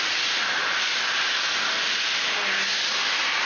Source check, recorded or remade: recorded